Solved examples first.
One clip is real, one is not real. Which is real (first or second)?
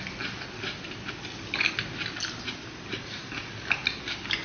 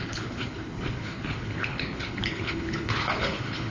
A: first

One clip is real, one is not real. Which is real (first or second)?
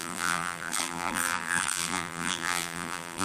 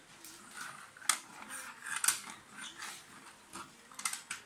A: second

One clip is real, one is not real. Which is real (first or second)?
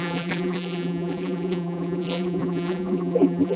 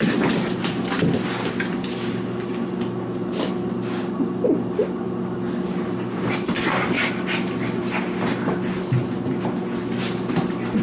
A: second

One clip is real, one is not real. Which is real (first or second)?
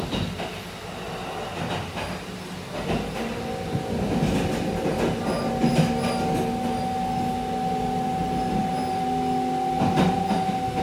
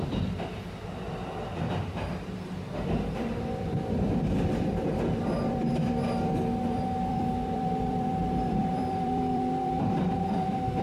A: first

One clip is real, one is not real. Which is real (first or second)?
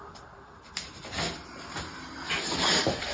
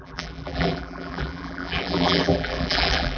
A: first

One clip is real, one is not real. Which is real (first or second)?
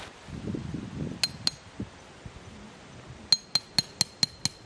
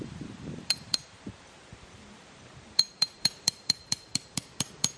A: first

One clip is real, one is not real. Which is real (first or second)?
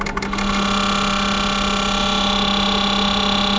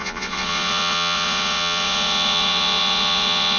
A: first